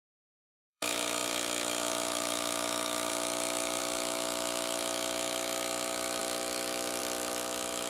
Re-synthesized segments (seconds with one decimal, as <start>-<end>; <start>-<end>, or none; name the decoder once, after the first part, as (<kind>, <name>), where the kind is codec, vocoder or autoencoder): 0.0-7.9 (autoencoder, DAC-VAE)